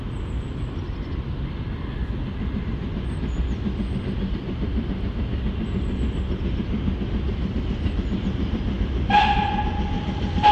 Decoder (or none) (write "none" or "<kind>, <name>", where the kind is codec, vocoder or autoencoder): none